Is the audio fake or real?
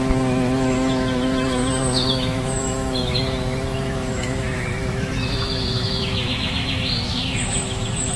fake